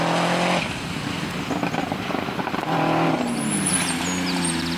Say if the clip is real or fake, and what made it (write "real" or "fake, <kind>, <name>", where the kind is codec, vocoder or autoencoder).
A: real